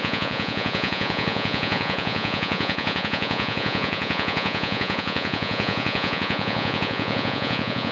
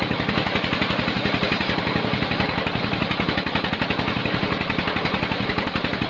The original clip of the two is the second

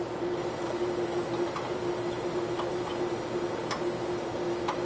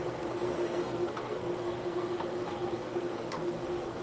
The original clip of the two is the first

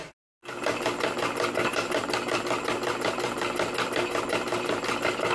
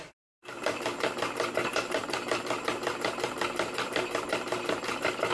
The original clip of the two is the first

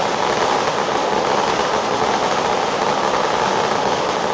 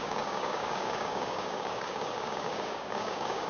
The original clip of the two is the first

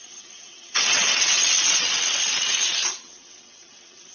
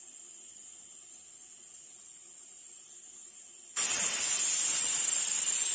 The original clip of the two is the second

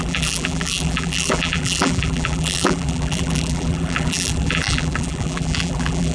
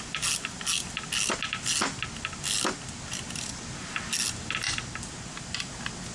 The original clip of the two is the second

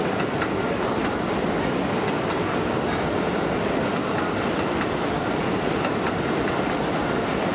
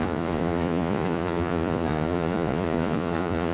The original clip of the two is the first